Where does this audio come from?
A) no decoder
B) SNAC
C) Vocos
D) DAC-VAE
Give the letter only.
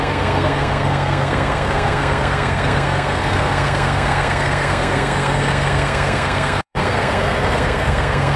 B